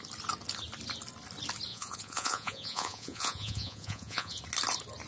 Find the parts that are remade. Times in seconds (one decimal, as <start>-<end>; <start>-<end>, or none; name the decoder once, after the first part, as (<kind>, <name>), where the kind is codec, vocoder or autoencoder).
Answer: 1.7-4.4 (vocoder, Vocos)